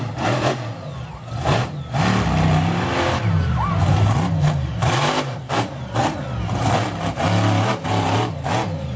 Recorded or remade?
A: recorded